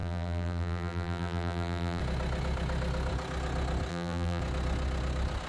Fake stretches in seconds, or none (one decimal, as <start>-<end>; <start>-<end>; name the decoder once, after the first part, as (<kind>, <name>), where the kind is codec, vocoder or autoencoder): 0.0-2.0 (vocoder, BigVGAN v2); 3.9-4.4